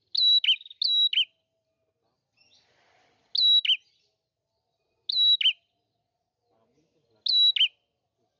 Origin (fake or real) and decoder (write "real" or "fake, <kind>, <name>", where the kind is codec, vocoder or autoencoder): real